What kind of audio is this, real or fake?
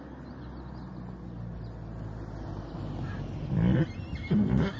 real